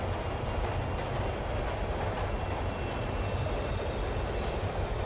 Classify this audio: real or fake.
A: real